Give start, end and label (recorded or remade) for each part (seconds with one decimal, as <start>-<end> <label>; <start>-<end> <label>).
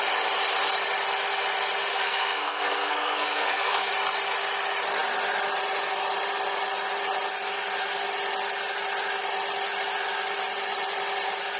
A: 0.0-1.9 recorded; 1.9-3.9 remade; 3.9-11.6 recorded